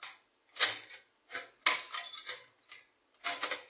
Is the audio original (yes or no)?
yes